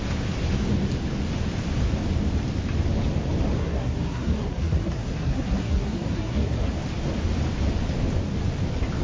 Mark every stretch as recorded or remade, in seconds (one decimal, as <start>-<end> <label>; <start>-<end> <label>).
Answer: 0.0-3.6 recorded; 3.6-6.7 remade; 6.7-9.0 recorded